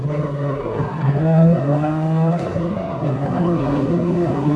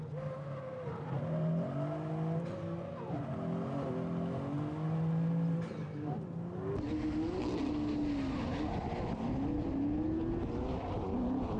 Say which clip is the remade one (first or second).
first